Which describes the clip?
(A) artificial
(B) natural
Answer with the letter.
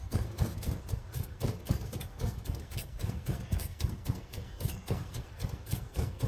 A